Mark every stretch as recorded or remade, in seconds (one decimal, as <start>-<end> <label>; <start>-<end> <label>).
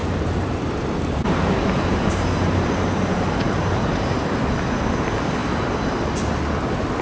0.0-4.2 remade; 4.2-7.0 recorded